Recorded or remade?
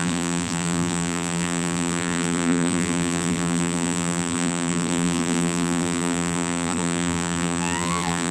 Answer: remade